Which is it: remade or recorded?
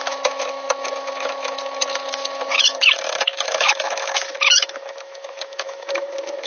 remade